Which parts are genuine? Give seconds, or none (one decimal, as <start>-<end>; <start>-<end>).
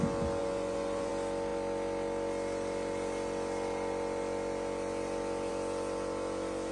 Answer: 0.0-0.4; 1.1-6.7